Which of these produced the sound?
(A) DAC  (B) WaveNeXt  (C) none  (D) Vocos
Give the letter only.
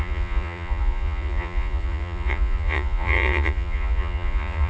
D